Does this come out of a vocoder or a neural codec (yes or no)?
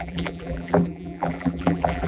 yes